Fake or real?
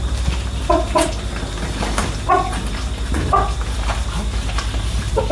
real